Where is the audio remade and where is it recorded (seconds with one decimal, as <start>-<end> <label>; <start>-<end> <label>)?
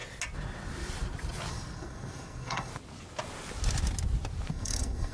0.0-1.5 recorded; 1.5-2.7 remade; 2.7-4.5 recorded; 4.5-5.1 remade